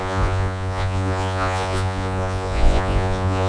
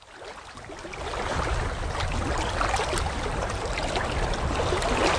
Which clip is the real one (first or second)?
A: second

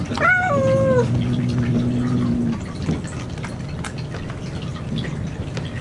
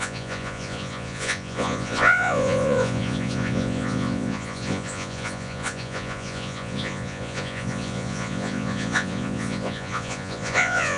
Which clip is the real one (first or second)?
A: first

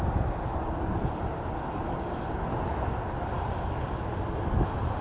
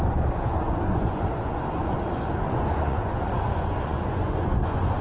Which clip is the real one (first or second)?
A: first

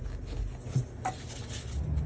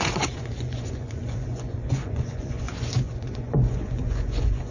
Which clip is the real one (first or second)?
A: first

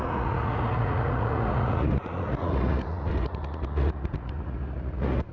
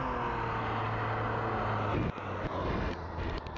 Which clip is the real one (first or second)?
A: second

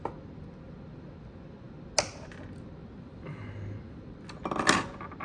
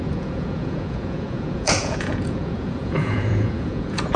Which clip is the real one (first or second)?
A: first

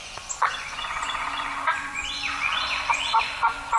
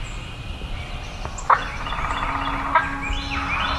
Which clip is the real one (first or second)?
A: second